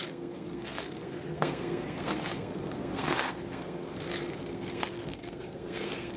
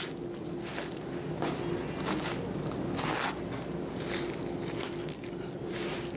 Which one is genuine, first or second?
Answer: second